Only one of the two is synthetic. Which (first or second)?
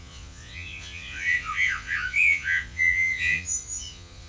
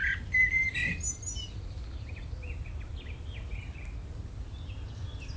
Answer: first